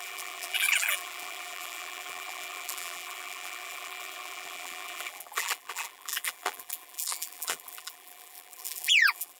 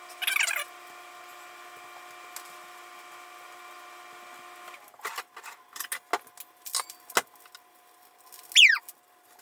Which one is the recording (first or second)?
second